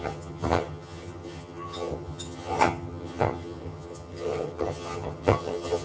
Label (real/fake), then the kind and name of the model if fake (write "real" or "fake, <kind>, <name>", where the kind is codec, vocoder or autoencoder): fake, vocoder, HiFi-GAN